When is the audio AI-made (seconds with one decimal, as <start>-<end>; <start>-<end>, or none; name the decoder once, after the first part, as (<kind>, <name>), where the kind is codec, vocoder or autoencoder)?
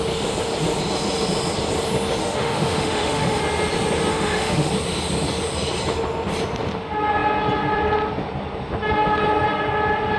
2.2-3.4 (autoencoder, DAC-VAE); 4.1-4.7